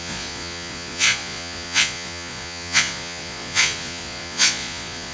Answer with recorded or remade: remade